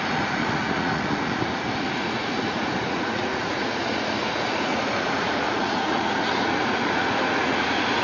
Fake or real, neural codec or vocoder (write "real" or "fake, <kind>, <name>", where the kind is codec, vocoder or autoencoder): fake, vocoder, Vocos